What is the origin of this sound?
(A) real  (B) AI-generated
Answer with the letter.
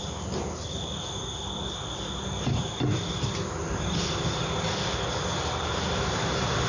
A